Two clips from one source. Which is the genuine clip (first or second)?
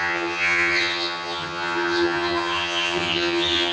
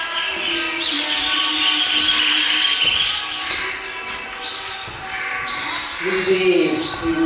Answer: second